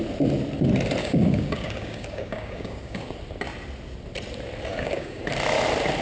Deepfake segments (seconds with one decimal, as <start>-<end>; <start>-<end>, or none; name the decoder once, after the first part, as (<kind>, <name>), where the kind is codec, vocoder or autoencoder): 1.0-3.1 (codec, DAC); 4.7-5.2